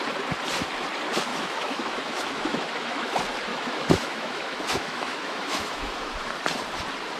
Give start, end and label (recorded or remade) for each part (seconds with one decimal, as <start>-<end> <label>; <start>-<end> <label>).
0.0-1.3 recorded; 1.3-3.1 remade; 3.1-3.5 recorded; 3.5-6.3 remade; 6.3-7.2 recorded